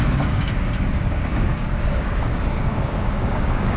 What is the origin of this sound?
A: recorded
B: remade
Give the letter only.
B